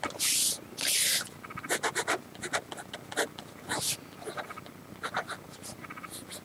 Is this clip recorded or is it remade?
recorded